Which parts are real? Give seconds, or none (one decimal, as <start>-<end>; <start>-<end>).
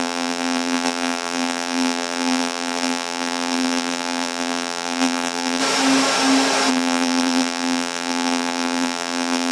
5.6-6.7